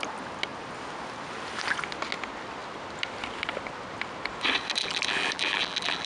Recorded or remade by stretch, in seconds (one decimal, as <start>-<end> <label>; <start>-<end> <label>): 0.0-4.8 recorded; 4.8-6.1 remade

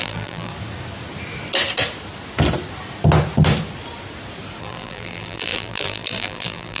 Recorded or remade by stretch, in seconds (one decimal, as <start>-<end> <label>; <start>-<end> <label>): 0.0-0.5 remade; 0.5-4.6 recorded; 4.6-6.8 remade

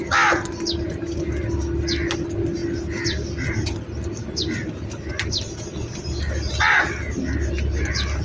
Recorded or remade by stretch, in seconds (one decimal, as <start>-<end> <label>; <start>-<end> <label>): 0.0-8.2 recorded

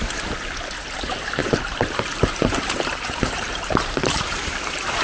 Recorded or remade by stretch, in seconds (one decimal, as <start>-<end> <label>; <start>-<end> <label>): 0.0-1.4 recorded; 1.4-4.4 remade; 4.4-5.0 recorded

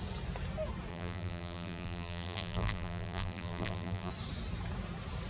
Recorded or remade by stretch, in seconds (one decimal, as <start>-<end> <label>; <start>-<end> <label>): 0.0-0.9 recorded; 0.9-4.1 remade; 4.1-5.3 recorded

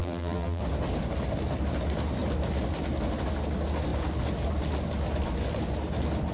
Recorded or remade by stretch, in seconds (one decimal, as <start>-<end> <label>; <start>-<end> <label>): 0.0-0.6 remade; 0.6-6.3 recorded